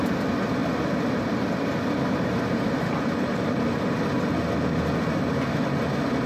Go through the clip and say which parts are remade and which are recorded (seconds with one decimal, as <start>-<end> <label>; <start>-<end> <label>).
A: 0.0-0.6 recorded; 0.6-3.8 remade; 3.8-6.3 recorded